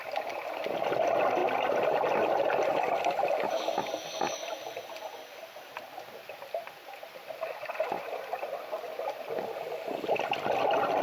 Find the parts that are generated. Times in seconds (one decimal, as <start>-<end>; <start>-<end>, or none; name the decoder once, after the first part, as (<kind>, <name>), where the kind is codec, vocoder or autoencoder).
none